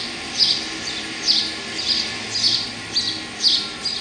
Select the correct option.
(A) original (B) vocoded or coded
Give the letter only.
A